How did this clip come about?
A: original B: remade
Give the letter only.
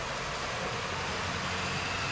A